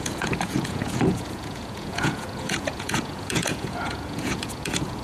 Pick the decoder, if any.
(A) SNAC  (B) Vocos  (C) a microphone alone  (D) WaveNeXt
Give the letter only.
B